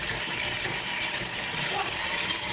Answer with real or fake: fake